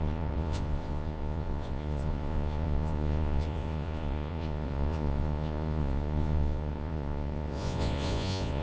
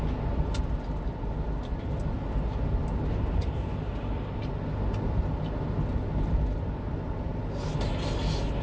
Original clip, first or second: second